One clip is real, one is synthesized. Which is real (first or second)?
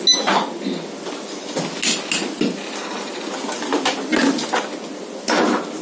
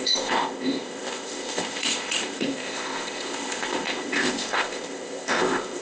first